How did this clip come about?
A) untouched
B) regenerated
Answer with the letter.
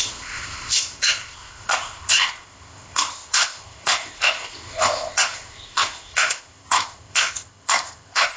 B